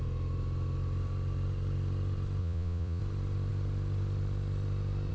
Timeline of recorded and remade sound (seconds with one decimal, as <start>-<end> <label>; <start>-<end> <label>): 0.0-2.4 recorded; 2.4-3.0 remade; 3.0-5.1 recorded